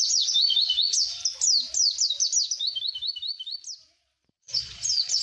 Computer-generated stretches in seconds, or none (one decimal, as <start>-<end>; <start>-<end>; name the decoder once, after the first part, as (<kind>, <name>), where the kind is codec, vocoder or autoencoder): 0.0-1.2 (vocoder, Vocos); 4.3-5.2